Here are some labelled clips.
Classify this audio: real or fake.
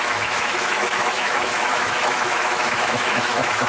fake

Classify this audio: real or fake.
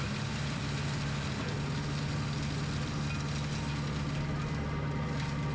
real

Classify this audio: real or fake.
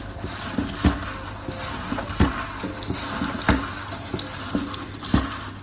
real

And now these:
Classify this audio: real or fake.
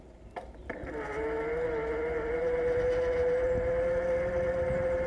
real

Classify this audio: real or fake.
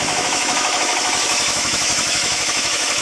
fake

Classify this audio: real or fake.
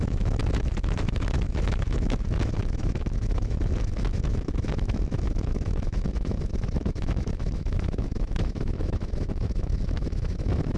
fake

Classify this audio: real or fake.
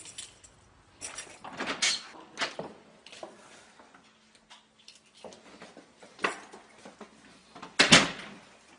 real